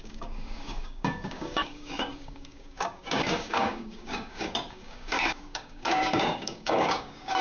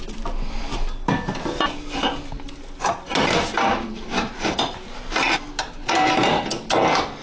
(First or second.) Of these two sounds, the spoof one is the first